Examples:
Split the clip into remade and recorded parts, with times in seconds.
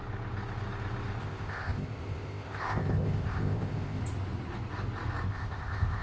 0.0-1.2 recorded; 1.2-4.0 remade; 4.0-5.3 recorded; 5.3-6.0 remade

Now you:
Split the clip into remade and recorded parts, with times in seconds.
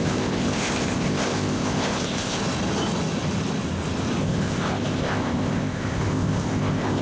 0.0-2.4 remade; 2.4-4.2 recorded; 4.2-7.0 remade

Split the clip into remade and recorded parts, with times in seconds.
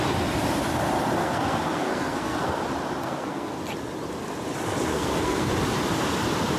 0.0-1.2 recorded; 1.2-2.6 remade; 2.6-3.0 recorded; 3.0-3.5 remade; 3.5-4.9 recorded; 4.9-5.5 remade; 5.5-6.6 recorded